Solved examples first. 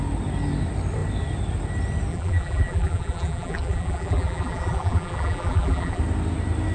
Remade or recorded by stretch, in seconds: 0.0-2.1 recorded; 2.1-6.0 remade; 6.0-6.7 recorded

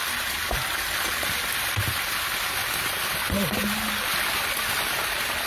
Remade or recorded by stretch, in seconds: 0.0-5.5 recorded

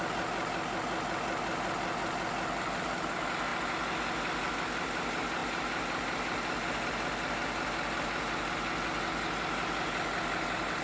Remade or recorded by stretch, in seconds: 0.0-10.8 recorded

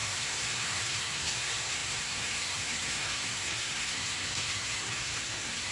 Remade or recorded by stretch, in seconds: 0.0-5.7 remade